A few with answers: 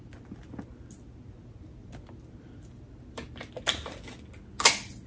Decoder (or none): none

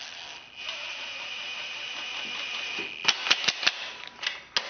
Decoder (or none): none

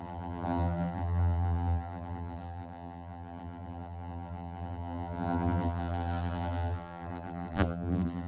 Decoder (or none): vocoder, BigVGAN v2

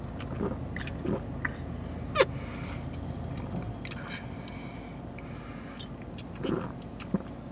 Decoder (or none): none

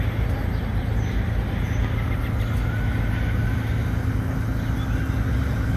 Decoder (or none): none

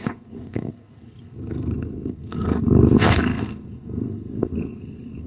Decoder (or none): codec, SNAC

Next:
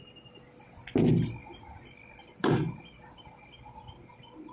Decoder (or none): none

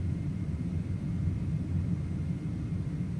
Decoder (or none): none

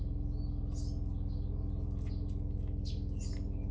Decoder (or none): none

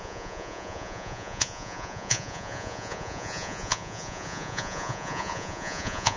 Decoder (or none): vocoder, Vocos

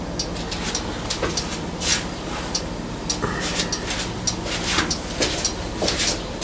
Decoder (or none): none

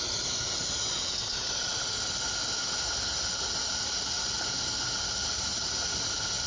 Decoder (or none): none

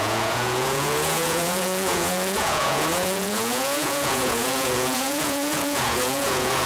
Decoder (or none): vocoder, Vocos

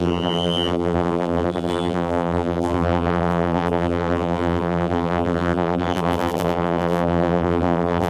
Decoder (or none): vocoder, BigVGAN v2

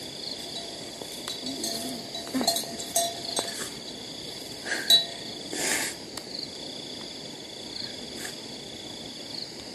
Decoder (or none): none